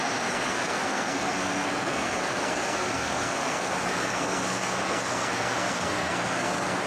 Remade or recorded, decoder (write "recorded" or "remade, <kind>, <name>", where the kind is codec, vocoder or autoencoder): remade, codec, SNAC